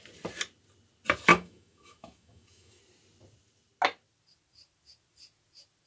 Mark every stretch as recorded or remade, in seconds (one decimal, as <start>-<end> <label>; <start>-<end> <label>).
0.0-1.3 recorded; 1.3-2.8 remade; 2.8-5.9 recorded